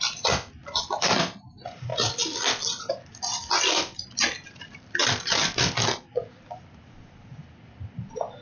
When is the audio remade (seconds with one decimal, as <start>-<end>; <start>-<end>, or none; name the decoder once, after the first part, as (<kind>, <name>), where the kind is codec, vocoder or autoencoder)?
0.0-1.9 (vocoder, BigVGAN v2); 2.8-8.4